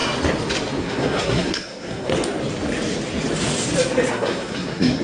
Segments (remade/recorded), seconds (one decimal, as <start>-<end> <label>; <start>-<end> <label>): 0.0-0.8 recorded; 0.8-2.1 remade; 2.1-4.1 recorded; 4.1-5.0 remade